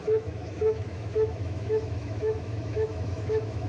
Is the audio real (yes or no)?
no